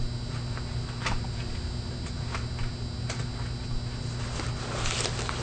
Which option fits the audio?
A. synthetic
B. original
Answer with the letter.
B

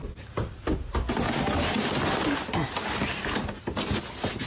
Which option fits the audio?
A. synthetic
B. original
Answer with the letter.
B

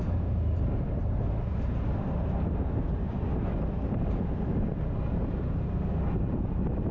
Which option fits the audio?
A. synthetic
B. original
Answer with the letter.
A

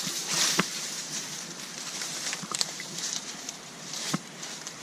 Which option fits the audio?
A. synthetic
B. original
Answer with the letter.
A